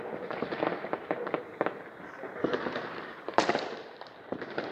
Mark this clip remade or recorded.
remade